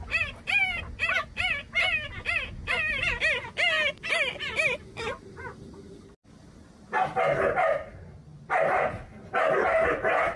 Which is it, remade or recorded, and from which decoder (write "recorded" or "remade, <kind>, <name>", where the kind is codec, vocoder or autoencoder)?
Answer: recorded